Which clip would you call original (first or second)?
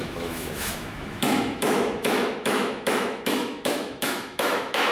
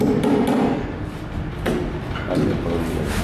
second